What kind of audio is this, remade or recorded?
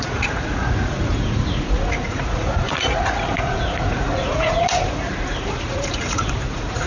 remade